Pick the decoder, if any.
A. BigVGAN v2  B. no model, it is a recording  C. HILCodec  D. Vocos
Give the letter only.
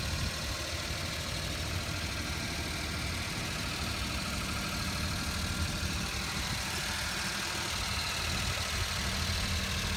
B